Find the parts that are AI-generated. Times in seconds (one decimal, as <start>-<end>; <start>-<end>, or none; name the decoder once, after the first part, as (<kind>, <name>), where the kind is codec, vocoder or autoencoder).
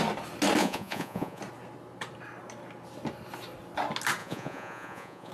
0.6-1.4 (vocoder, Vocos); 4.2-5.3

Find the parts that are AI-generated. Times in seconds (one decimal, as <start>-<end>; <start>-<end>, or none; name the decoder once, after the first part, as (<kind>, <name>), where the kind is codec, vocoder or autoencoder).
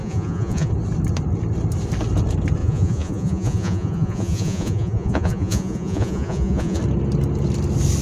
0.0-0.7 (vocoder, Vocos); 2.6-6.8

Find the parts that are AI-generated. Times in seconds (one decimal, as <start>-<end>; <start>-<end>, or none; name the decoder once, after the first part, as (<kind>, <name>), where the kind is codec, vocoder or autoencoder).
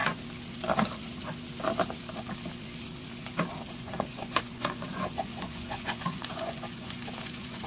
3.7-7.7 (vocoder, Vocos)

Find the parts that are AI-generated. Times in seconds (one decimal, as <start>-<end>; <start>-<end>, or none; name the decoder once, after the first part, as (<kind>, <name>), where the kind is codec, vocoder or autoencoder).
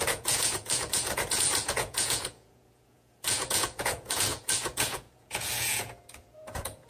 0.0-6.9 (vocoder, Vocos)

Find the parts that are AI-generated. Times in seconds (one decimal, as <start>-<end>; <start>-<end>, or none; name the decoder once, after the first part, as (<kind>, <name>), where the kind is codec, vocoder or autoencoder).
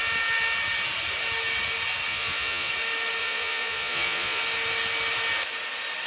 2.1-2.7 (vocoder, Vocos); 3.2-4.4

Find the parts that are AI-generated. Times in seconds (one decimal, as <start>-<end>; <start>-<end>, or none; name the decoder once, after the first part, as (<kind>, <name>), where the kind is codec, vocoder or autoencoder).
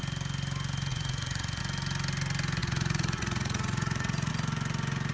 0.9-1.6 (vocoder, Vocos); 2.6-4.3